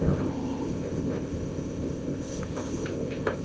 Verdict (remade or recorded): remade